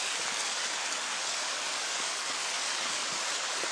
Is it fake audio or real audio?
fake